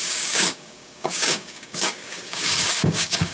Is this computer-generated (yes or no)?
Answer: yes